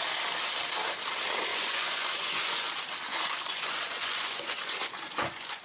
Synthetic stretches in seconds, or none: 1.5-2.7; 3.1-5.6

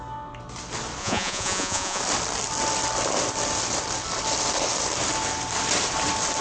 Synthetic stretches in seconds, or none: 1.0-2.0

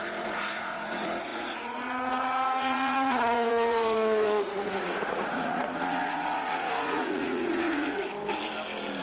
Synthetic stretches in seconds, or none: 0.0-8.1

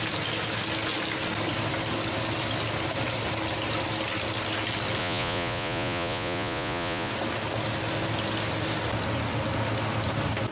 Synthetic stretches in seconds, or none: 5.0-7.1

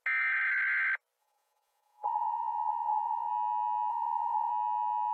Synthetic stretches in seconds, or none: 1.2-3.3; 3.9-4.5

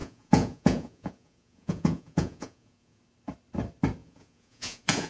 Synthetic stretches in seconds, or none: 0.0-3.0; 4.0-5.1

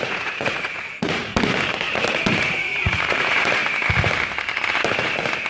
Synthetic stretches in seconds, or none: 0.0-1.3; 2.4-3.6

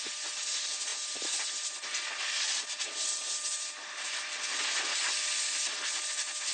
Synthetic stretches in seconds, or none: none